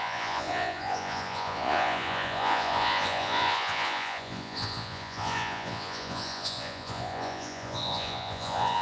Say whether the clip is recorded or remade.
remade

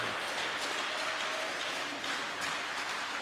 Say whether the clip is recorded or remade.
recorded